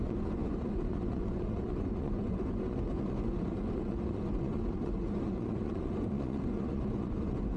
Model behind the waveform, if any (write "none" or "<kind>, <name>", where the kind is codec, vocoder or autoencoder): vocoder, Vocos